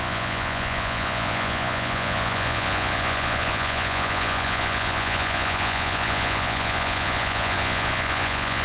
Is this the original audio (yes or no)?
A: no